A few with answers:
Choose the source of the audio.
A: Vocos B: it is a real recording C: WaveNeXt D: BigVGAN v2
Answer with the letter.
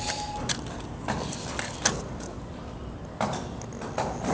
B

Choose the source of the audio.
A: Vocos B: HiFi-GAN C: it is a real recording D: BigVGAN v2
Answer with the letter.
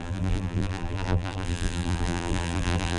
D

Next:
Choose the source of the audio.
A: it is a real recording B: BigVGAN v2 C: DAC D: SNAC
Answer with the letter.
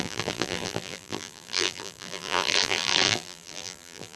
B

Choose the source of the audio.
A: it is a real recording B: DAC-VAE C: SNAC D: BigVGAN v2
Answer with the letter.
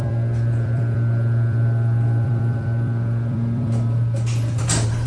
D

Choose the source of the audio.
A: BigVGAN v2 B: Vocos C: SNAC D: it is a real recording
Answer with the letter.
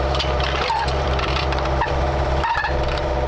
A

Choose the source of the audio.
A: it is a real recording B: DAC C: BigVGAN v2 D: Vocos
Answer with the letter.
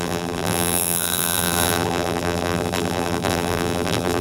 C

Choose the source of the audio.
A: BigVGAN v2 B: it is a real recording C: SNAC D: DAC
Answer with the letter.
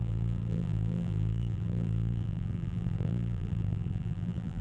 A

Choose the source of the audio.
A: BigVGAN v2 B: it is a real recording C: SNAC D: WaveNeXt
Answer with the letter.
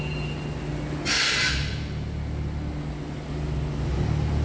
B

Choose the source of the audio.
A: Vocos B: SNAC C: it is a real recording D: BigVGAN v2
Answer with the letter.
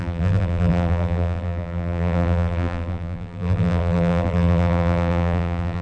D